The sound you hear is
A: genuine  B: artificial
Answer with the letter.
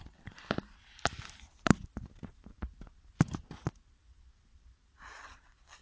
B